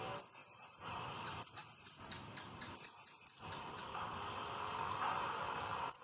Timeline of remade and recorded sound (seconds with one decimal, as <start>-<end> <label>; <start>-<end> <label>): 0.0-0.4 recorded; 0.4-1.0 remade; 1.0-6.0 recorded